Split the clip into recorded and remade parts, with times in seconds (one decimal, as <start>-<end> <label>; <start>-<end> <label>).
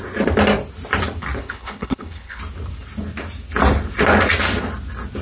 0.0-1.4 recorded; 1.4-2.4 remade; 2.4-5.2 recorded